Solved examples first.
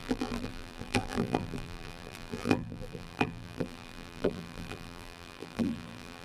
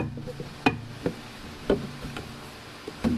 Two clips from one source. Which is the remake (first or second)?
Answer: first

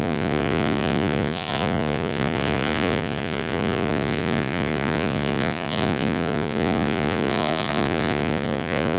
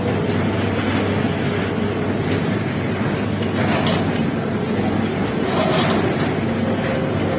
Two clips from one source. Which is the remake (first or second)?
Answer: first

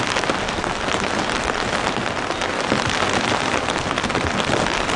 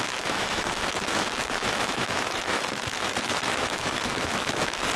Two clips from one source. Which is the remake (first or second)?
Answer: second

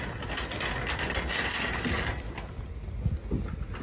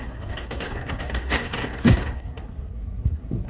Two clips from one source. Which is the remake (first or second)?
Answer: second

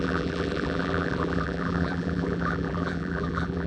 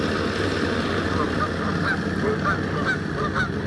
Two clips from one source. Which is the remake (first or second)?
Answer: first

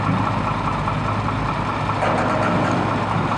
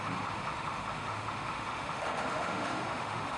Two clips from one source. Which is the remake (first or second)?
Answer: second